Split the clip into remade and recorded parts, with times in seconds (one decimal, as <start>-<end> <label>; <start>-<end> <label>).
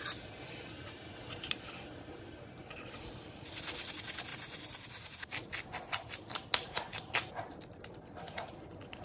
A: 0.0-9.0 recorded